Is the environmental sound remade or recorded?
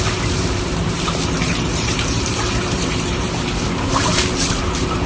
remade